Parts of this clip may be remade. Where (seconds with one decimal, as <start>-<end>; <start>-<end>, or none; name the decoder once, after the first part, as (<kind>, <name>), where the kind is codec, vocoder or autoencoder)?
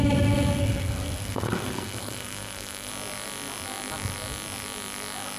0.6-2.9 (codec, SNAC)